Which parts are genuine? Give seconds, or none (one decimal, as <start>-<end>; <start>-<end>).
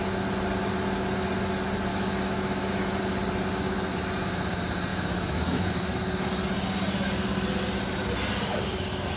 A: 0.0-1.9; 3.0-4.9; 5.7-9.2